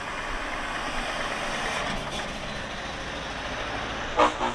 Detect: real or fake real